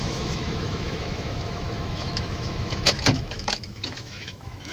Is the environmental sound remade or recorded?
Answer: remade